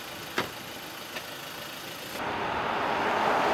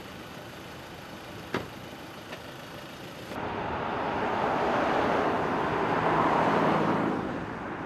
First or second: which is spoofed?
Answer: second